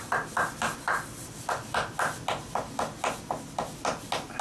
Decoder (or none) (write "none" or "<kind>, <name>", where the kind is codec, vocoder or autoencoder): none